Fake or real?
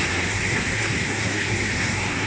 fake